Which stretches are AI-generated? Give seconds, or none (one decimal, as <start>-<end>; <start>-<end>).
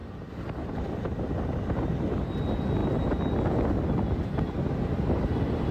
none